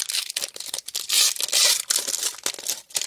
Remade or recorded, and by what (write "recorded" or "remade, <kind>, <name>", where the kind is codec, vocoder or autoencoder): recorded